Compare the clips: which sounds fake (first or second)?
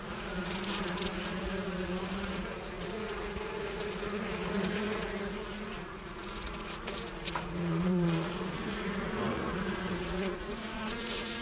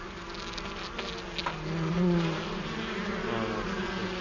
first